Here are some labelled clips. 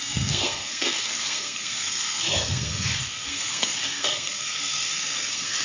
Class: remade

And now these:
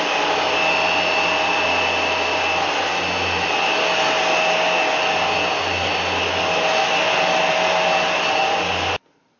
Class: recorded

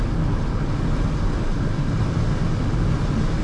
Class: recorded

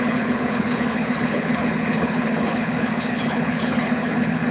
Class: remade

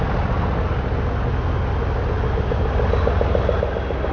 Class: recorded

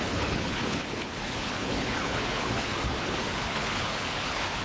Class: remade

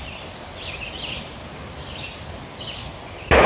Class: recorded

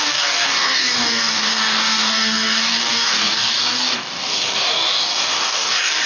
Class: remade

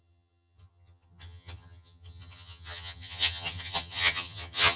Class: remade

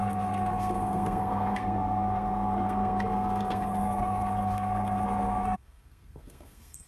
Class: remade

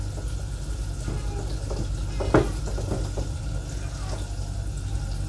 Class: recorded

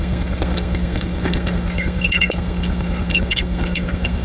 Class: remade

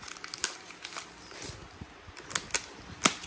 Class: recorded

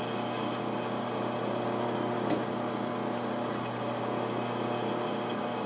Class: recorded